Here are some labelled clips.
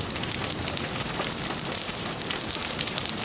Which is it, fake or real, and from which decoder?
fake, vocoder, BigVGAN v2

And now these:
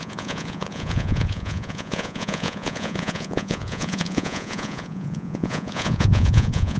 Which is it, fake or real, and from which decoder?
fake, vocoder, Vocos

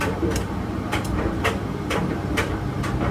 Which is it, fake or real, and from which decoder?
fake, vocoder, BigVGAN v2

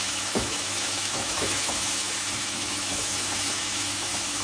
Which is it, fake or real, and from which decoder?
fake, autoencoder, DAC-VAE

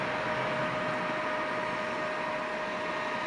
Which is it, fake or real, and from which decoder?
real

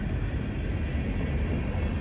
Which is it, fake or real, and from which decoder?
real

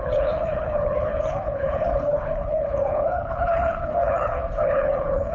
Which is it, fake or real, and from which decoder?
fake, codec, HILCodec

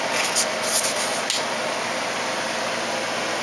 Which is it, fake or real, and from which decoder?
real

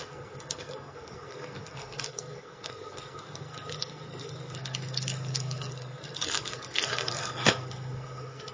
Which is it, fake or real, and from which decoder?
fake, codec, SNAC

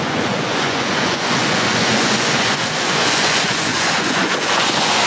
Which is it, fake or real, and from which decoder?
fake, vocoder, Vocos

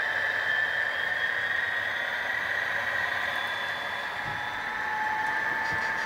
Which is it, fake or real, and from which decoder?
real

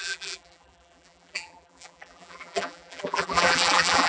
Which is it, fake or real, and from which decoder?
fake, vocoder, BigVGAN v2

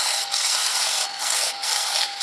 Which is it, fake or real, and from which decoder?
fake, codec, SNAC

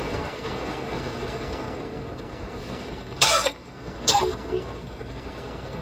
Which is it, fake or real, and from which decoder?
fake, codec, SNAC